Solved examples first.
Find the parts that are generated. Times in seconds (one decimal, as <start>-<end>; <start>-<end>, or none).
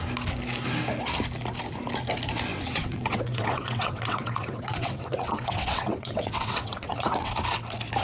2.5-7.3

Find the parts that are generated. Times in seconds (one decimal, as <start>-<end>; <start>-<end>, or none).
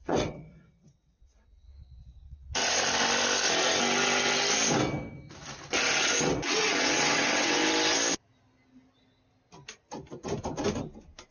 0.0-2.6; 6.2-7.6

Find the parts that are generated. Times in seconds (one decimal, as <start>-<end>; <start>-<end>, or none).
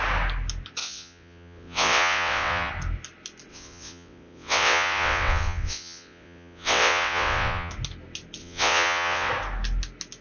0.8-2.7; 3.5-7.7; 8.4-9.3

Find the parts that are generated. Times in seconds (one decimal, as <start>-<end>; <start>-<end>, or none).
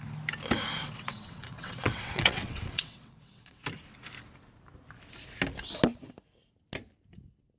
0.8-3.6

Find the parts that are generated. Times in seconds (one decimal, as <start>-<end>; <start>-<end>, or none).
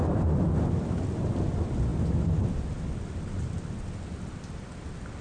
none